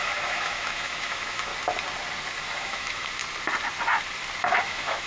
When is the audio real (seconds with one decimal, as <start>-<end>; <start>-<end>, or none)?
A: 1.5-2.4; 3.2-4.6